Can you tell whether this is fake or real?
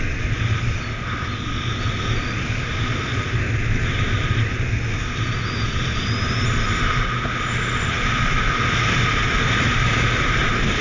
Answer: real